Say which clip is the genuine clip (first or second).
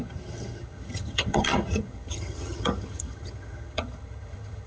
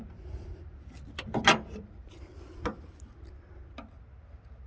second